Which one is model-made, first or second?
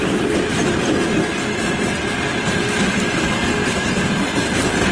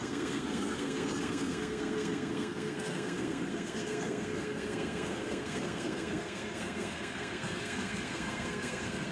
second